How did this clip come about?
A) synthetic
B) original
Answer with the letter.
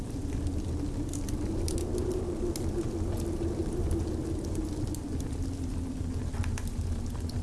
B